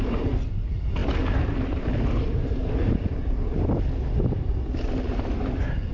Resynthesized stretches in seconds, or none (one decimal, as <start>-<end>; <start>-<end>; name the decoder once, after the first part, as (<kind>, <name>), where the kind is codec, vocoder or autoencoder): none